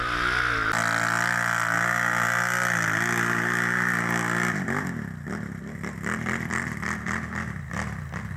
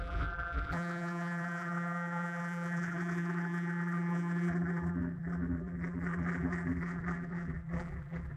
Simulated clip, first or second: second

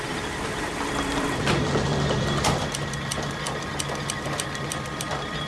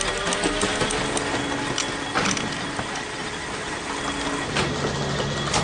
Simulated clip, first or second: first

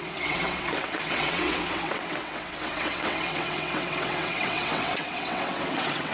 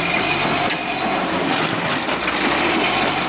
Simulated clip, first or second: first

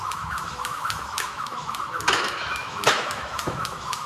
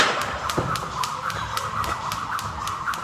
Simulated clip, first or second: first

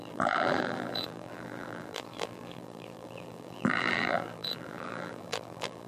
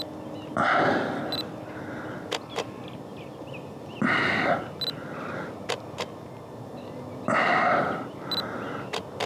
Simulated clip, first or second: first